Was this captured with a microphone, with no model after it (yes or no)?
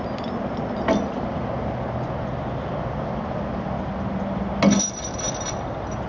yes